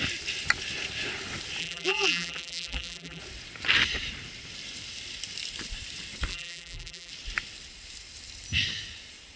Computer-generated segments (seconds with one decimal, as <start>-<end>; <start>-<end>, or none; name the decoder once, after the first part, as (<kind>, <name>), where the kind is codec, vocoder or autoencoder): 1.6-3.2 (vocoder, BigVGAN v2); 6.3-7.1